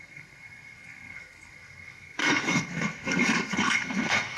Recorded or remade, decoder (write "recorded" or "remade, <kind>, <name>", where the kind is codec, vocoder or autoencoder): remade, codec, SNAC